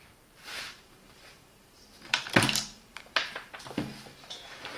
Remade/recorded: remade